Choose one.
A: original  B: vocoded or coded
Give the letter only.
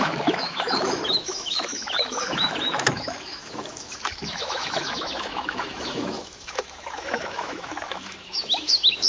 B